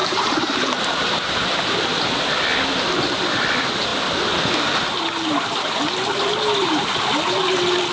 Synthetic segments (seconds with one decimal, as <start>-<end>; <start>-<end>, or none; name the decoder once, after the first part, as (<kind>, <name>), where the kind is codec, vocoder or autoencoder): 0.0-1.6 (vocoder, BigVGAN v2); 6.6-7.1